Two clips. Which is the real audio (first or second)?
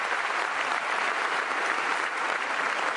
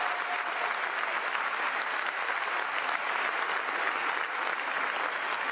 second